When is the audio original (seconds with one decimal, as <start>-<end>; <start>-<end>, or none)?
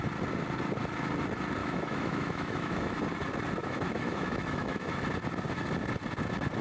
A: 0.0-1.6; 3.0-3.6; 5.0-6.6